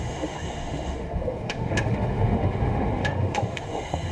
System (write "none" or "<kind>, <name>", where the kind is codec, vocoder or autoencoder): autoencoder, DAC-VAE